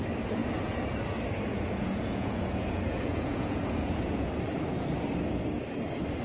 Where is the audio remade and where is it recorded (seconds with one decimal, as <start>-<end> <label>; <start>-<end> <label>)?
0.0-1.5 recorded; 1.5-4.3 remade; 4.3-6.2 recorded